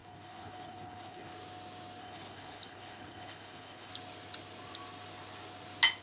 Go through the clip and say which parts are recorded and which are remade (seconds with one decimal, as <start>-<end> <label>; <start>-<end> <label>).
0.0-1.3 remade; 1.3-2.0 recorded; 2.0-3.9 remade; 3.9-6.0 recorded